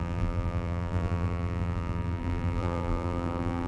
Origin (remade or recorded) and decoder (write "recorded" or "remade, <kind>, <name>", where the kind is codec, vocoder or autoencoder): remade, vocoder, BigVGAN v2